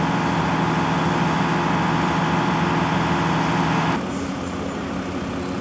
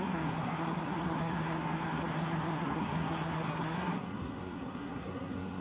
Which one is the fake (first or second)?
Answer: second